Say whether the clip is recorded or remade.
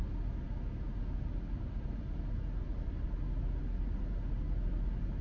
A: recorded